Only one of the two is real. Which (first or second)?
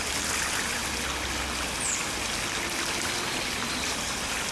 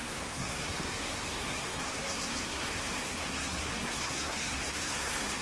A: first